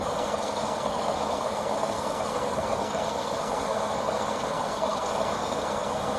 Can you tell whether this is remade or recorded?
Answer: remade